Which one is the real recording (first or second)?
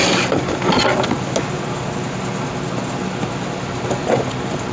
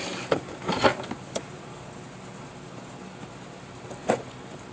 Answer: first